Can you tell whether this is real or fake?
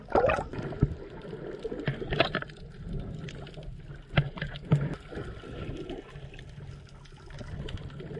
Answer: real